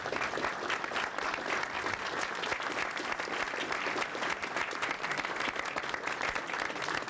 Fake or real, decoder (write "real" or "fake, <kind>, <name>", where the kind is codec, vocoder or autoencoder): real